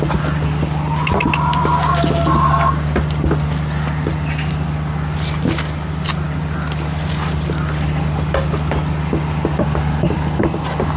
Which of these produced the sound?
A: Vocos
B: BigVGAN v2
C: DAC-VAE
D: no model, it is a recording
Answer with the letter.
D